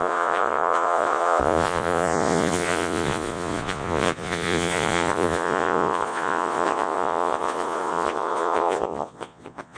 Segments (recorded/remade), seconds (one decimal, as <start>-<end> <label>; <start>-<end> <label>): 0.0-9.8 remade